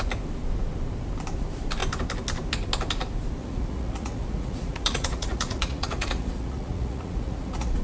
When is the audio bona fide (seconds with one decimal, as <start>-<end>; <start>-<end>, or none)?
0.0-3.4